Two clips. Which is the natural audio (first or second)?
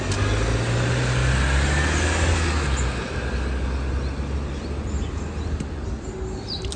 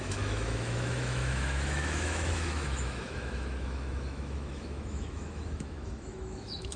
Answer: first